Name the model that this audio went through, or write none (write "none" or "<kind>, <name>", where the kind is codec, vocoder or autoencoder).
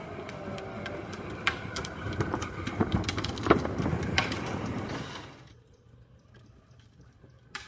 vocoder, BigVGAN v2